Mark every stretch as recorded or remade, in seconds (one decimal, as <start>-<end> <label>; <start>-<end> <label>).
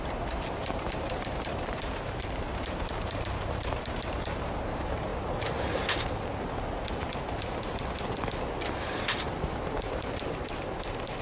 0.0-5.1 remade; 5.1-9.5 recorded; 9.5-11.2 remade